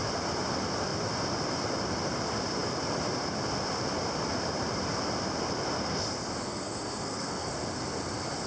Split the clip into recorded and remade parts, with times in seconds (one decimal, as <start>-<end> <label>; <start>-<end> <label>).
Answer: 0.0-6.5 recorded; 6.5-7.5 remade; 7.5-8.5 recorded

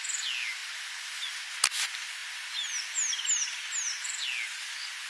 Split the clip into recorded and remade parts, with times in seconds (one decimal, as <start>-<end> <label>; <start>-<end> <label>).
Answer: 0.0-5.1 recorded

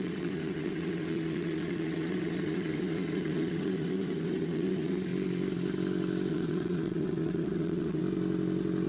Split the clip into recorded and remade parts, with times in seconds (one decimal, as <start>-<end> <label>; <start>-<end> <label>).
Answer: 0.0-5.1 remade; 5.1-6.3 recorded; 6.3-8.0 remade; 8.0-8.9 recorded

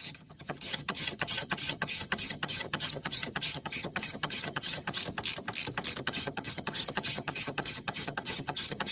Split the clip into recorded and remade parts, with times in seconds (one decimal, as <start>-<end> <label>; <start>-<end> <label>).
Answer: 0.0-5.0 remade; 5.0-6.0 recorded; 6.0-8.9 remade

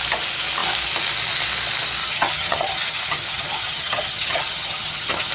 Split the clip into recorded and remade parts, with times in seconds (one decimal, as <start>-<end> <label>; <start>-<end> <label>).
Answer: 0.0-2.0 recorded; 2.0-5.3 remade

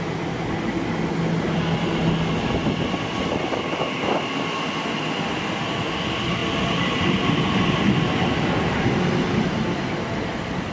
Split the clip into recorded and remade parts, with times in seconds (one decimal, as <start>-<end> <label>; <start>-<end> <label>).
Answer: 0.0-10.7 recorded